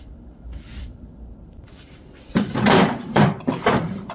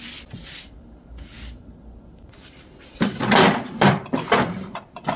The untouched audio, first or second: second